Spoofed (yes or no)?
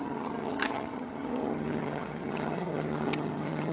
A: yes